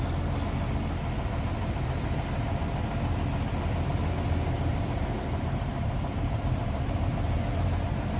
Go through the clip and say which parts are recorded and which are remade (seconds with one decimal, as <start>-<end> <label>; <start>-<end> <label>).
0.0-4.7 recorded; 4.7-8.2 remade